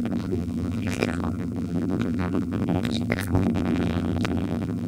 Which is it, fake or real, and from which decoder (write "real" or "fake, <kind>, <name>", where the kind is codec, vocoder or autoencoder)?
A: fake, vocoder, BigVGAN v2